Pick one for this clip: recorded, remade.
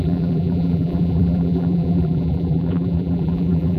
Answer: remade